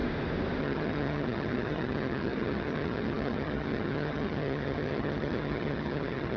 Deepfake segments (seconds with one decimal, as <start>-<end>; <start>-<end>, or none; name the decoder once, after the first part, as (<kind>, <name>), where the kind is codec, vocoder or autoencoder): 0.6-6.4 (vocoder, HiFi-GAN)